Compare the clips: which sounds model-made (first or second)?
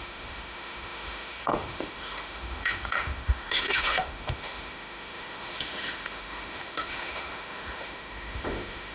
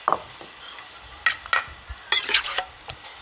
first